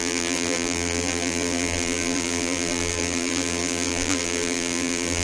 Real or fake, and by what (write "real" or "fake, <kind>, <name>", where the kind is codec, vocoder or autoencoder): fake, vocoder, BigVGAN v2